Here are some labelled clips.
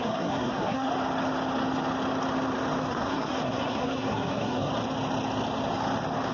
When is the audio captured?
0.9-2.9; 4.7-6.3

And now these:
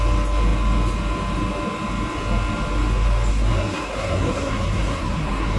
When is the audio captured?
0.0-3.3

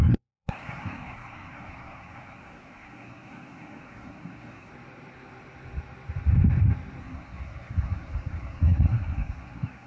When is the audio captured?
4.7-7.0

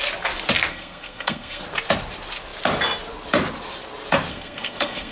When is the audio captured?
0.0-0.7; 1.6-4.3

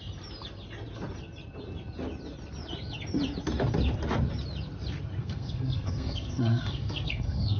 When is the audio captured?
0.0-5.2